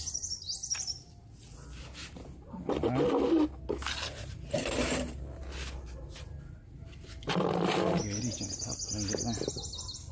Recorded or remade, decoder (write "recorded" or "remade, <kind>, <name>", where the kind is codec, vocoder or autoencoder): recorded